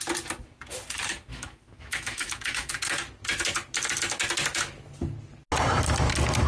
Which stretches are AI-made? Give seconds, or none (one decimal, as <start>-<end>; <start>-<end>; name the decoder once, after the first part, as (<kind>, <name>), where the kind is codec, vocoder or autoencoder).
1.3-2.7 (autoencoder, DAC-VAE)